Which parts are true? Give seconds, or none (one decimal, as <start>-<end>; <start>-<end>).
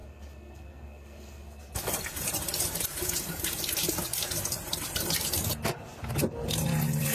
1.6-7.1